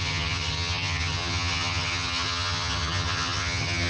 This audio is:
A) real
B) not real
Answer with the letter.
B